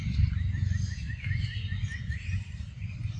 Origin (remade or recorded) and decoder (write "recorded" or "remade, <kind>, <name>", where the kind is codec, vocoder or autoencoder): recorded